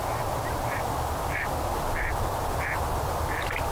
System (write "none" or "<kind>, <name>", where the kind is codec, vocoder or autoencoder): none